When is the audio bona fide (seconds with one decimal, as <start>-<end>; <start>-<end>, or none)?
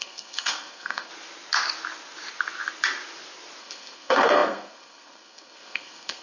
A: 1.1-3.6